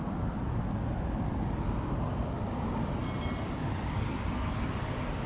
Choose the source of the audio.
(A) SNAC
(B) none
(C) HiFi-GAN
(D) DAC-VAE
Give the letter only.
B